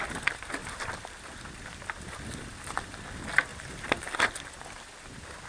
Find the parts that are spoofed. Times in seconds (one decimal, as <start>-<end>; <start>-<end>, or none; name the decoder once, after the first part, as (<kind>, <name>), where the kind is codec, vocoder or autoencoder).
0.6-1.2 (vocoder, BigVGAN v2); 3.5-4.2